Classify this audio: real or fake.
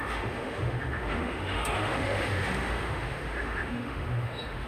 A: fake